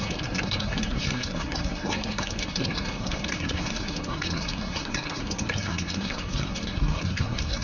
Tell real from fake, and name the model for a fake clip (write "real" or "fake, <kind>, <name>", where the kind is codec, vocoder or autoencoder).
fake, codec, SNAC